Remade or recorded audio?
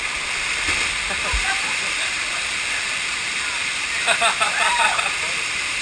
remade